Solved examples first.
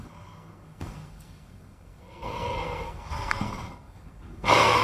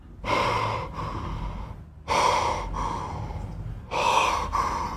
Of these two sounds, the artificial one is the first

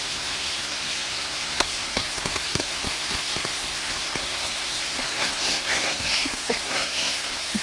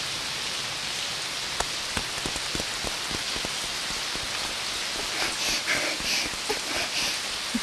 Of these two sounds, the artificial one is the first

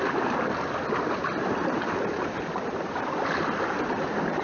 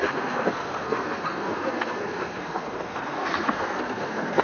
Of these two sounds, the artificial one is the second